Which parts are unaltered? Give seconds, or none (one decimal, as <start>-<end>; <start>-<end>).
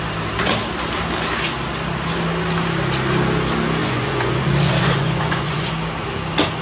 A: 0.0-3.8; 5.7-6.6